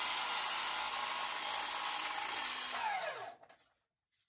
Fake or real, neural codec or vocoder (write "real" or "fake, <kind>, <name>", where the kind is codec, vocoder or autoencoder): real